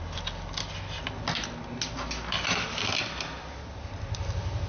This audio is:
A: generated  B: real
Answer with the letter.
B